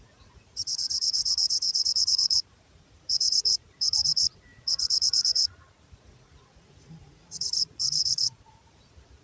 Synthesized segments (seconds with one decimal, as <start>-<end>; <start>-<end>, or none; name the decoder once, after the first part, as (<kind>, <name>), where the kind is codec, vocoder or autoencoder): 0.0-9.2 (vocoder, Vocos)